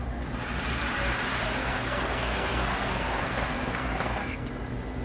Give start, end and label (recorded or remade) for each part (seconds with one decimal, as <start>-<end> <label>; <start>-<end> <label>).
0.0-1.6 recorded; 1.6-4.5 remade; 4.5-5.0 recorded